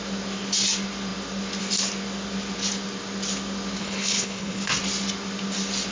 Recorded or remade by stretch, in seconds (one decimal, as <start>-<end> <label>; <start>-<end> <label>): 0.0-3.8 recorded; 3.8-4.7 remade; 4.7-5.9 recorded